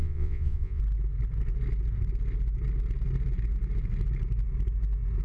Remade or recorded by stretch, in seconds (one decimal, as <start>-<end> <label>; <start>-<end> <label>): 0.0-0.8 remade; 0.8-5.2 recorded